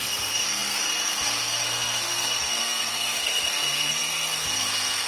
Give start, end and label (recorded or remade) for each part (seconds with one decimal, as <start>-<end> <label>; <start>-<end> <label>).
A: 0.0-5.1 remade